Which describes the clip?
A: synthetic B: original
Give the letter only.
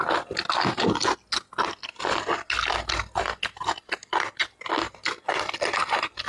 B